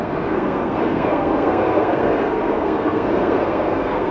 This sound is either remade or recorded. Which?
remade